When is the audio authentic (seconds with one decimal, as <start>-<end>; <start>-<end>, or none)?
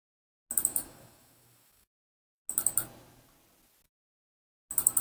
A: 0.0-0.7; 2.4-5.0